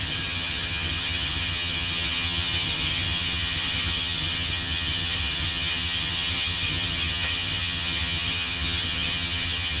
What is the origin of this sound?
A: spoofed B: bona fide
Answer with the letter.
A